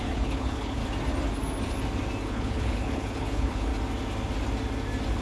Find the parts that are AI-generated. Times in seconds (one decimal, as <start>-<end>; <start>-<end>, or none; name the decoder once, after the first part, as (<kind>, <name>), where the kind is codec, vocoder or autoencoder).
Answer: 0.0-0.8 (codec, HILCodec); 2.2-3.7